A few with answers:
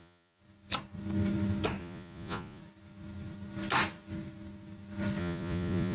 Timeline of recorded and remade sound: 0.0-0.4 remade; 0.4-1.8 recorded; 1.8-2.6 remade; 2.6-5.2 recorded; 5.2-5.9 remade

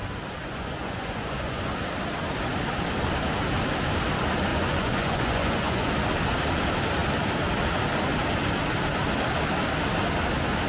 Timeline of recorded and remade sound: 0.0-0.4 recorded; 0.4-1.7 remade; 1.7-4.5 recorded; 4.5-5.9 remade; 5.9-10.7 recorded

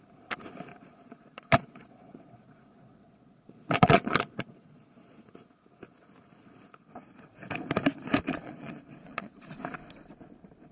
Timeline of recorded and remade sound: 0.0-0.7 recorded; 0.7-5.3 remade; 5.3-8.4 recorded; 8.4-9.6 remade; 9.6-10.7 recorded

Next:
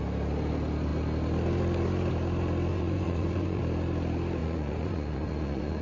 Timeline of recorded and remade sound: 0.0-2.7 recorded; 2.7-3.6 remade; 3.6-4.4 recorded; 4.4-5.8 remade

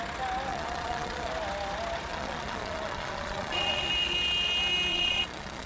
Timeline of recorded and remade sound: 0.0-0.5 recorded; 0.5-1.3 remade; 1.3-2.1 recorded; 2.1-3.9 remade; 3.9-4.9 recorded; 4.9-5.7 remade